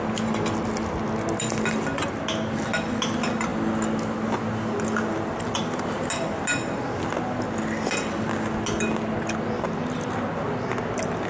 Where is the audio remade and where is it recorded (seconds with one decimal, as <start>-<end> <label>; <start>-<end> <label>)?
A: 0.0-11.3 recorded

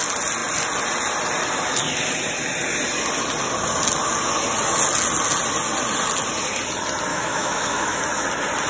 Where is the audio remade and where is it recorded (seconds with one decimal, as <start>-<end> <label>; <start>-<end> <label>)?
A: 0.0-7.1 recorded; 7.1-8.0 remade; 8.0-8.7 recorded

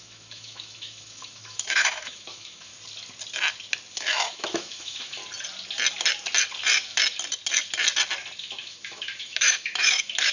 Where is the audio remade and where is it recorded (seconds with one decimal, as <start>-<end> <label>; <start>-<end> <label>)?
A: 0.0-2.7 remade; 2.7-3.9 recorded; 3.9-5.2 remade; 5.2-8.4 recorded; 8.4-10.3 remade

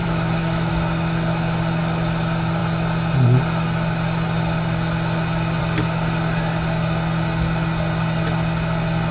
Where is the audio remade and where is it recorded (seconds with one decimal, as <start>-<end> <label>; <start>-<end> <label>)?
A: 0.0-0.7 remade; 0.7-9.1 recorded

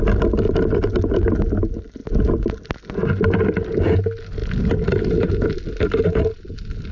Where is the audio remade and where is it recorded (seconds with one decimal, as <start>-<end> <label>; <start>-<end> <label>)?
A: 0.0-6.9 recorded

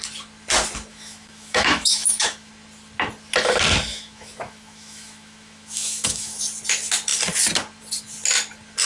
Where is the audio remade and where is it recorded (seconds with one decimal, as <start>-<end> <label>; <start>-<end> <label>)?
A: 0.0-0.9 recorded; 0.9-2.5 remade; 2.5-3.9 recorded; 3.9-6.4 remade; 6.4-8.9 recorded